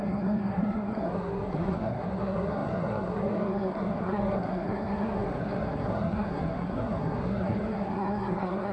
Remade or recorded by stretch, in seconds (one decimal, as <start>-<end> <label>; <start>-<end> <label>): 0.0-8.7 remade